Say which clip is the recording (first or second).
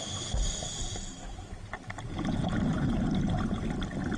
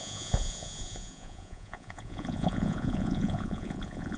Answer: first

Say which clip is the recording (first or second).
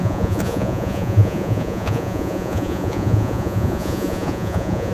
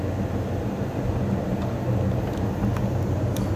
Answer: second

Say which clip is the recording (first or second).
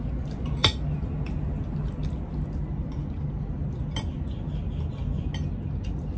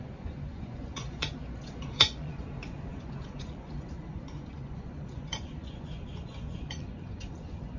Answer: first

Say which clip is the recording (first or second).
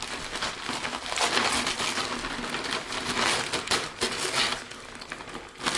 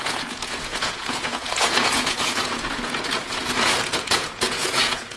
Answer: first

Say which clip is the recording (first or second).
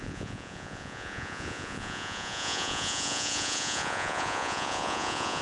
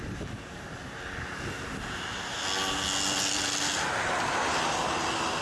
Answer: second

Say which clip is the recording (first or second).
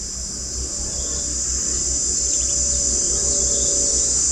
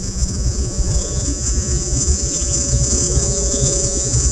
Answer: first